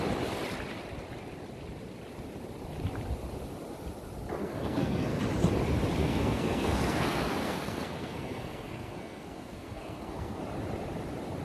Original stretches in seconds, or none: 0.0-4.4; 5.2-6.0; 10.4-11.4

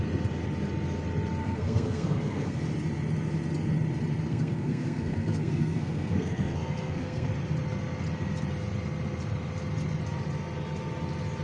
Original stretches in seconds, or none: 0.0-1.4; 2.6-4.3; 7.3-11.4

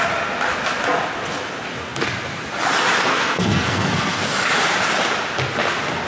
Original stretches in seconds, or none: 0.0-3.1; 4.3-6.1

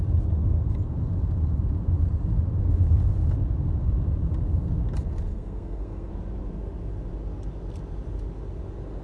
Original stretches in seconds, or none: 0.0-5.3; 6.1-9.0

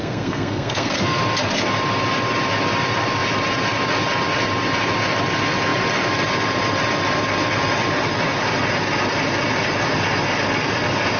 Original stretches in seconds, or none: 1.2-11.2

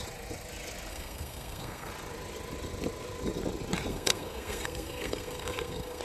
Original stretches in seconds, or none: 0.0-0.9; 1.9-3.9